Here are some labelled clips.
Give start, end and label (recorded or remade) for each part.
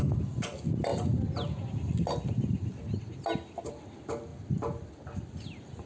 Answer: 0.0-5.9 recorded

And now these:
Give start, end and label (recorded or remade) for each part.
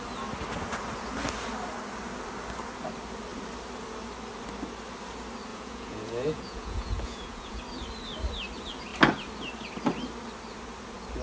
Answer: 0.0-5.5 recorded; 5.5-7.6 remade; 7.6-11.2 recorded